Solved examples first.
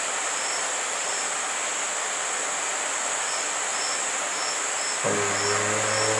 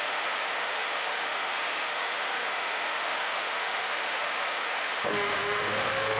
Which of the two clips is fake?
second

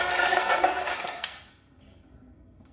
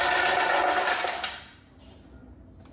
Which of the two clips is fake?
first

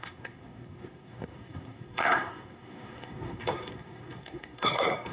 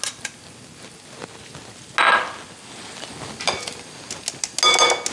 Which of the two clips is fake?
first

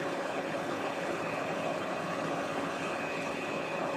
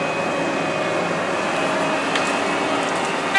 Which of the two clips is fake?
first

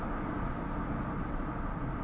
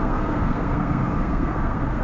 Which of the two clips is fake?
second